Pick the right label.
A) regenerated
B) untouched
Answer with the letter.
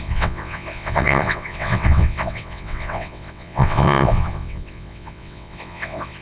A